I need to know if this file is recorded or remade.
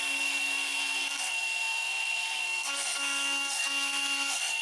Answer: remade